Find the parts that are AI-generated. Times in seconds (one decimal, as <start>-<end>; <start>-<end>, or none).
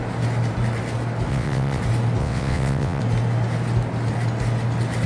1.3-1.8; 2.2-3.0